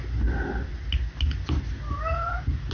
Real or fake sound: real